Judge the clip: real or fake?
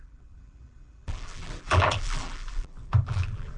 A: fake